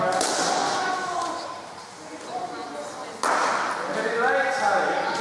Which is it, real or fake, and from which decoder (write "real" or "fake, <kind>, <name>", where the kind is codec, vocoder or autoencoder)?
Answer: real